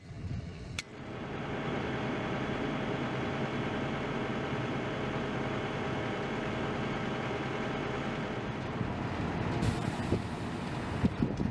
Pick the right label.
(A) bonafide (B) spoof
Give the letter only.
B